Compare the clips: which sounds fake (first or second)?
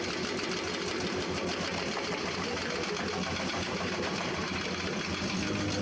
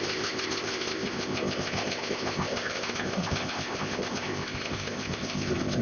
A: second